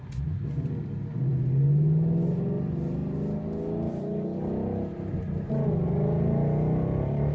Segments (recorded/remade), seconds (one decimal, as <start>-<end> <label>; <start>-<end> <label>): 0.0-7.3 recorded